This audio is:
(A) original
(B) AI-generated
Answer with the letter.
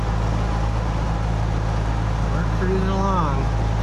A